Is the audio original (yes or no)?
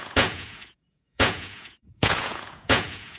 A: no